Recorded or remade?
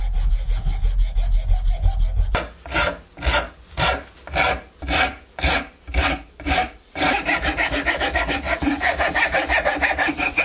recorded